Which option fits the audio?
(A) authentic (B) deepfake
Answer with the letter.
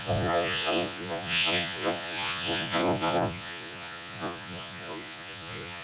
B